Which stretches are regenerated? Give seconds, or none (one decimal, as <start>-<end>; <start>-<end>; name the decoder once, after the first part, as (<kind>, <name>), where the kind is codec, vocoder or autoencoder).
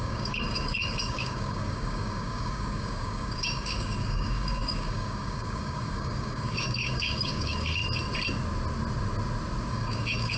0.0-7.8 (codec, DAC); 9.7-10.4